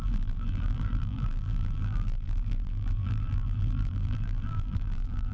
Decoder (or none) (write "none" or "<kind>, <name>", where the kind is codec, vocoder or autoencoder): vocoder, BigVGAN v2